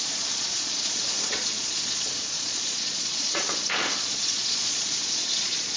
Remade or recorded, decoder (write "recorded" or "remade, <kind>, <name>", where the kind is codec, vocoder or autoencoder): remade, vocoder, Vocos